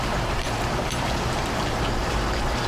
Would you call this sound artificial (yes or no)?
yes